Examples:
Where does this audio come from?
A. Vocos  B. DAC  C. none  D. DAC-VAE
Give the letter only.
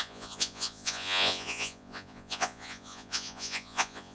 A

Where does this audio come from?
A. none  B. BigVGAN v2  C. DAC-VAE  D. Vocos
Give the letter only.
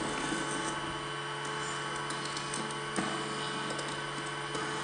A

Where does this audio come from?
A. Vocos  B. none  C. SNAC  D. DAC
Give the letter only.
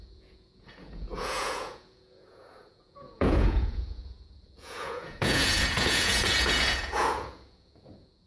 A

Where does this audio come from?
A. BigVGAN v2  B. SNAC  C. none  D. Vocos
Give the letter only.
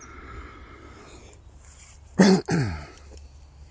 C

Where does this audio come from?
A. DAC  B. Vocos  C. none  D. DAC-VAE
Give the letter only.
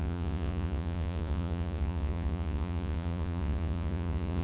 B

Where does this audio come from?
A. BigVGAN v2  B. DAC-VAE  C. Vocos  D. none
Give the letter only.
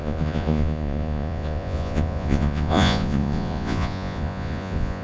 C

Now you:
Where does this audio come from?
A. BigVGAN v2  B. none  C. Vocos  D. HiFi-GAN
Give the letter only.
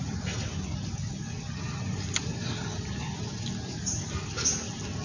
B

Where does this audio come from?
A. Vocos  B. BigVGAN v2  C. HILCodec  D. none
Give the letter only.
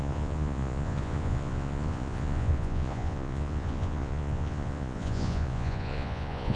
A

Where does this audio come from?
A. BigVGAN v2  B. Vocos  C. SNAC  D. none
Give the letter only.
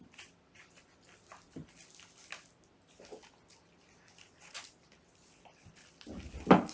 D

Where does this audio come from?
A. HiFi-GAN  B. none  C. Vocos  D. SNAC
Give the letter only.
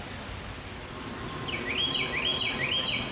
B